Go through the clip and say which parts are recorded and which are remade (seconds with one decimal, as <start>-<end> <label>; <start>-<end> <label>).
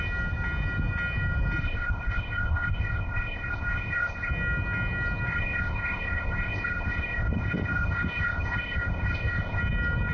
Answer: 0.0-1.6 recorded; 1.6-4.3 remade; 4.3-5.3 recorded; 5.3-9.6 remade; 9.6-10.1 recorded